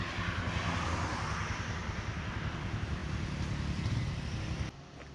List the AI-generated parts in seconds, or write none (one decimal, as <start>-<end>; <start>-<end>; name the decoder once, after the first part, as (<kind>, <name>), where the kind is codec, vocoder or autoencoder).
none